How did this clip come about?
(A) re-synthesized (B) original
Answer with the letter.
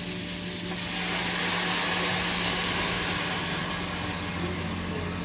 B